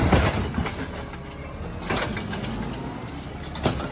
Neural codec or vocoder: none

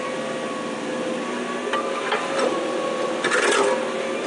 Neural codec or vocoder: none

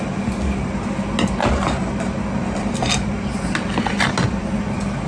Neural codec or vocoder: none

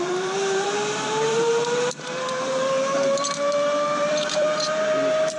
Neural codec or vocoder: vocoder, BigVGAN v2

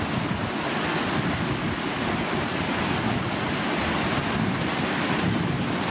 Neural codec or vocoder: none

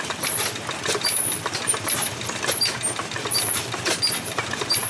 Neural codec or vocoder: vocoder, BigVGAN v2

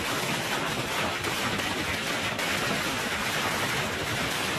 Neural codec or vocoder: none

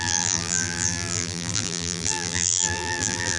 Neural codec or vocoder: vocoder, BigVGAN v2